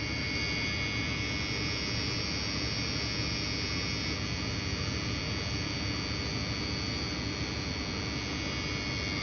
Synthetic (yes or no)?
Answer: no